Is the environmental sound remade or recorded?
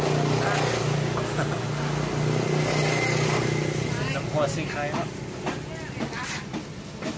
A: recorded